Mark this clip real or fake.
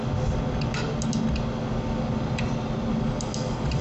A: real